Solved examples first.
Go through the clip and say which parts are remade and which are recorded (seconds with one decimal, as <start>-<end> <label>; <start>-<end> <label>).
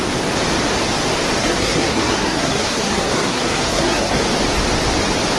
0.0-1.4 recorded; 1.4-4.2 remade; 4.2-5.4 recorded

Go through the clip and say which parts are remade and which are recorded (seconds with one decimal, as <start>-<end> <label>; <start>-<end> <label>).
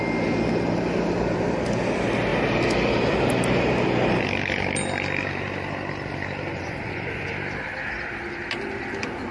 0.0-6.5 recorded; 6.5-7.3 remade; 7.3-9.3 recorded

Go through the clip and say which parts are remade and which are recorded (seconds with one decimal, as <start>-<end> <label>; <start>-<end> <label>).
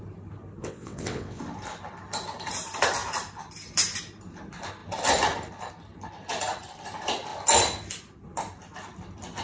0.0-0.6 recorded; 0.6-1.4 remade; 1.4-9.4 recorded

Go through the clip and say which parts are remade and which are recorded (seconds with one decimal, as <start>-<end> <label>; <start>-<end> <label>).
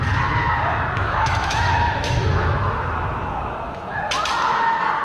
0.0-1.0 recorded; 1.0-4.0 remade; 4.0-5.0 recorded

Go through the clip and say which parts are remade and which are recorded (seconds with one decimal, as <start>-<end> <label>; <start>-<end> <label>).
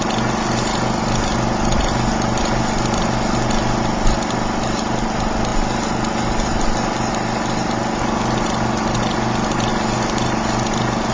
0.0-11.1 recorded